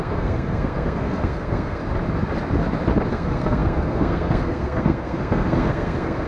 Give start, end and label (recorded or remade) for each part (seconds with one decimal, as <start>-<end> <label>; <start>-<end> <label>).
0.0-1.8 remade; 1.8-3.1 recorded; 3.1-6.3 remade